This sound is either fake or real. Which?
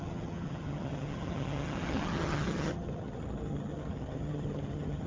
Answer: fake